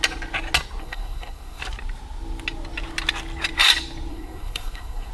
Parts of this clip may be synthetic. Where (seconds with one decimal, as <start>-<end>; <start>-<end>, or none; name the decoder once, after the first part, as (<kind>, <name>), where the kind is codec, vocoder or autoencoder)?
0.8-1.6 (codec, SNAC); 4.1-5.1